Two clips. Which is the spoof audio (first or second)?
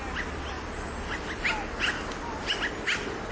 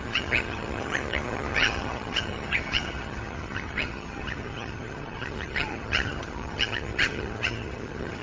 second